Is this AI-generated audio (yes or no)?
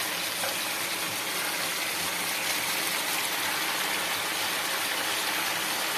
no